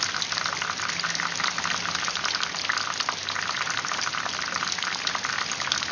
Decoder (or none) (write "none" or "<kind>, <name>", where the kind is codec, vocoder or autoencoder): none